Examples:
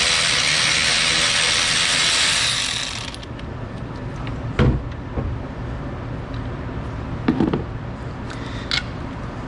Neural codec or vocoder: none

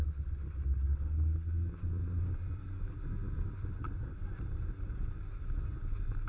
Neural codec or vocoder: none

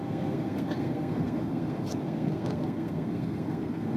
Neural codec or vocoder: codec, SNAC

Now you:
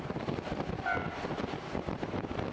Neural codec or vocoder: none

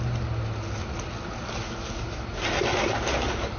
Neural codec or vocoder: none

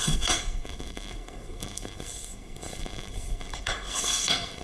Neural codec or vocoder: codec, SNAC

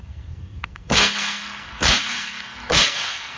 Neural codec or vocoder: codec, SNAC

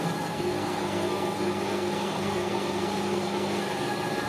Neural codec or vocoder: codec, SNAC